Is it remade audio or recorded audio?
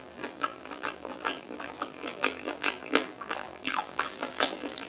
remade